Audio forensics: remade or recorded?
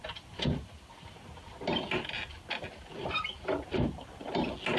recorded